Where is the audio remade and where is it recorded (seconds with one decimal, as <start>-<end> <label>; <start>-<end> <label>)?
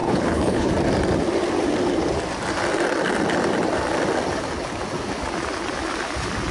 0.0-0.7 remade; 0.7-6.5 recorded